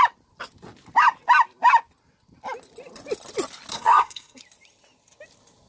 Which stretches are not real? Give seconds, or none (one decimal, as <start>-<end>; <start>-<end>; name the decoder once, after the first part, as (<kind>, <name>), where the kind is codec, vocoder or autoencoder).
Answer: 3.7-4.4 (codec, SNAC)